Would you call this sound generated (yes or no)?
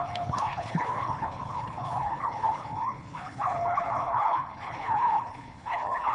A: yes